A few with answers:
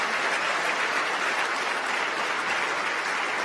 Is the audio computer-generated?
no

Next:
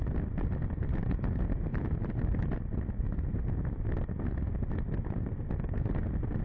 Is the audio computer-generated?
no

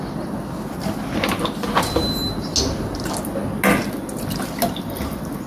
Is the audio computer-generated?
no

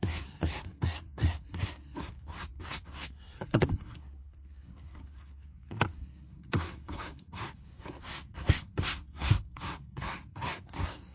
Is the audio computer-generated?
yes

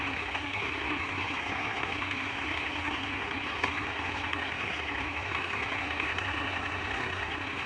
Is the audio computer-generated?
yes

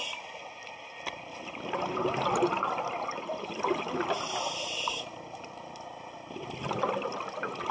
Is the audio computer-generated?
no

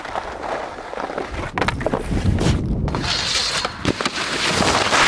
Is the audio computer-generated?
no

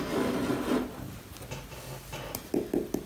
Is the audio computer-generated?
no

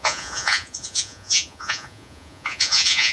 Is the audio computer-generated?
yes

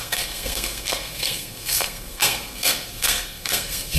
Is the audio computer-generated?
yes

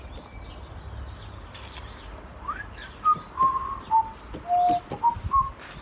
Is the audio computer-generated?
no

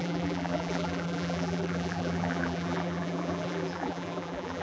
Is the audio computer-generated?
yes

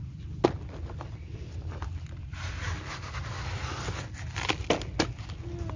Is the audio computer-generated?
no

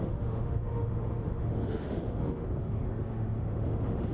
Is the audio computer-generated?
yes